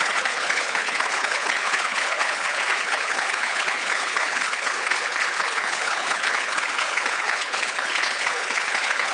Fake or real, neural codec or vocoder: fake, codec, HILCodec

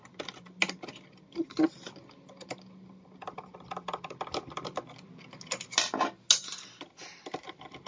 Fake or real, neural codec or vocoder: real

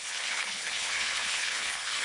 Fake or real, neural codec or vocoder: fake, codec, HILCodec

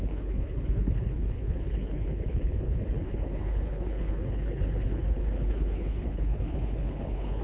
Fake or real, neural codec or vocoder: fake, codec, HILCodec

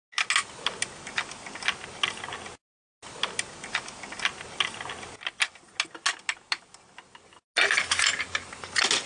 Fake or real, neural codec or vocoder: real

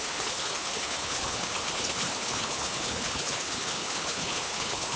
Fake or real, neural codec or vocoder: fake, codec, HILCodec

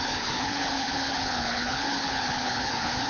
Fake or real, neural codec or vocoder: fake, codec, HILCodec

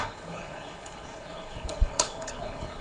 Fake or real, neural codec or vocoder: fake, codec, HILCodec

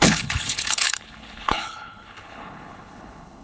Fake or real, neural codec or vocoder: fake, codec, HILCodec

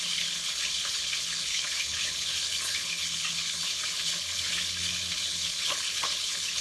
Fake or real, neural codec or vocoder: fake, codec, HILCodec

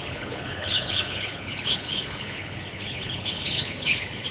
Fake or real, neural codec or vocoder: fake, codec, HILCodec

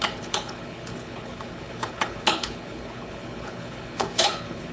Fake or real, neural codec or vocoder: fake, codec, HILCodec